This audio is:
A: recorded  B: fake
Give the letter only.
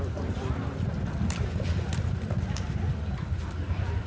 A